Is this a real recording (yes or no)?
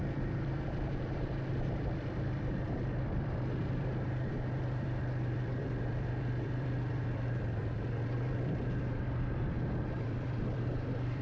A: no